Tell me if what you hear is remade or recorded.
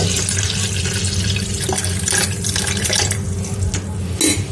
recorded